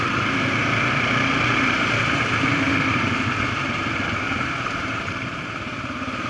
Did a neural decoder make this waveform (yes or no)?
yes